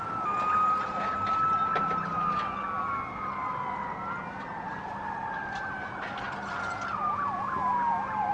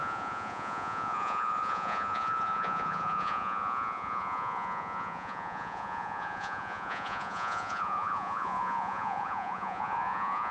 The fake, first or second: second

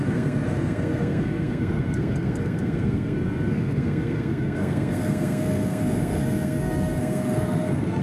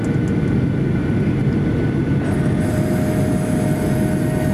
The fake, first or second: first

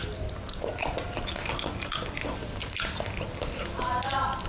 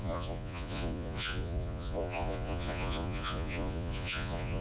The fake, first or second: second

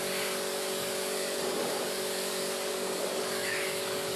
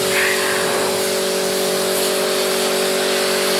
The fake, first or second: first